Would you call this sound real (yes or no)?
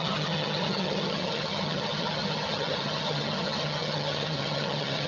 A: no